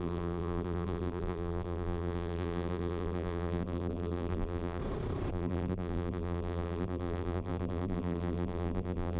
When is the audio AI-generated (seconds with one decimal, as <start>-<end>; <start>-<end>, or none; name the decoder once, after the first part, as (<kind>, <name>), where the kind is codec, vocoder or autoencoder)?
0.0-4.8 (vocoder, BigVGAN v2); 5.3-9.2